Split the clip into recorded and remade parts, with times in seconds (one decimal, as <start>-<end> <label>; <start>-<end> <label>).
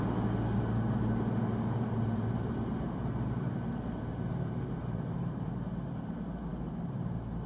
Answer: 0.0-1.5 recorded; 1.5-5.5 remade; 5.5-7.5 recorded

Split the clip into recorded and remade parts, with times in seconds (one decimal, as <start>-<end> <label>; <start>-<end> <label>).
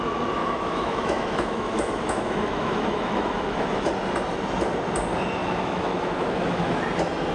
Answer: 0.0-0.4 recorded; 0.4-3.9 remade; 3.9-5.4 recorded; 5.4-6.8 remade; 6.8-7.3 recorded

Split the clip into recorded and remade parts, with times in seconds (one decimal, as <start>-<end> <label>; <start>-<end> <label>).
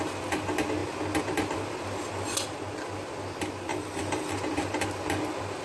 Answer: 0.0-3.7 recorded; 3.7-4.3 remade; 4.3-5.6 recorded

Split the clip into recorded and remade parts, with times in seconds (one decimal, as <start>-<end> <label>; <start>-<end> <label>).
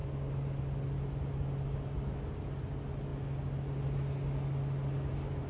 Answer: 0.0-5.5 recorded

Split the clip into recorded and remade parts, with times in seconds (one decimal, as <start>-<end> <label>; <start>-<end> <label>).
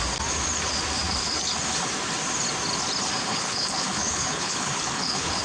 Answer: 0.0-3.3 recorded; 3.3-5.4 remade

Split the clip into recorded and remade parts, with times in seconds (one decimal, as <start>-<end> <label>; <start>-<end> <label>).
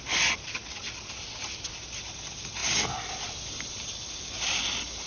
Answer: 0.0-5.1 recorded